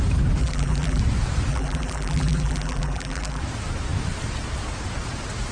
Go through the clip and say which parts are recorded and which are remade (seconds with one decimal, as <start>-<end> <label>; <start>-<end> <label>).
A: 0.0-0.4 recorded; 0.4-1.0 remade; 1.0-1.5 recorded; 1.5-3.4 remade; 3.4-5.5 recorded